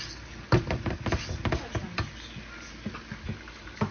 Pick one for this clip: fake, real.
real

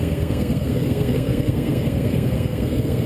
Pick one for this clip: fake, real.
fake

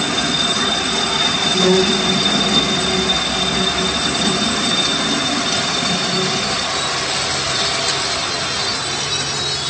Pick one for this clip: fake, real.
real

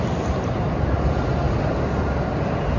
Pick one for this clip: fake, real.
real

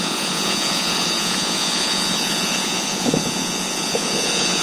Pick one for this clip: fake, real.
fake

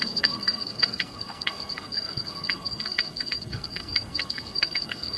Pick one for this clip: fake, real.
fake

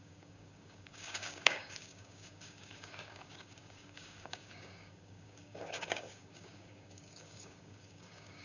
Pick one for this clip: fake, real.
fake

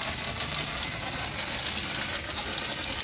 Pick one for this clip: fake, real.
real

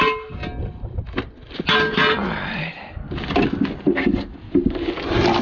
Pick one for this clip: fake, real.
real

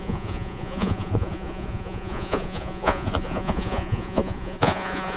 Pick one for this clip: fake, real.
fake